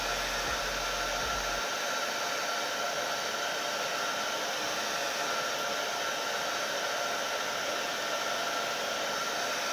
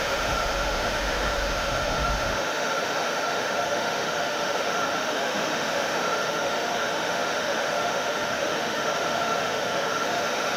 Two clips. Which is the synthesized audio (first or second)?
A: second